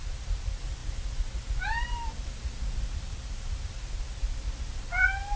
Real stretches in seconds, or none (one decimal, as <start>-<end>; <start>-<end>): 0.0-5.4